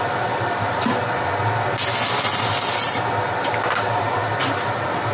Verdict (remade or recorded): recorded